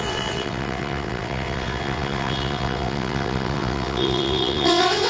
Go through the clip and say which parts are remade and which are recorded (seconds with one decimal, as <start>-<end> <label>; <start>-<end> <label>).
0.0-5.1 remade

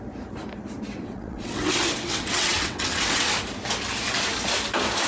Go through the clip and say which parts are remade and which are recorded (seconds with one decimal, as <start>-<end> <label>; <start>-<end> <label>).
0.0-1.0 recorded; 1.0-1.7 remade; 1.7-2.1 recorded; 2.1-3.3 remade; 3.3-5.1 recorded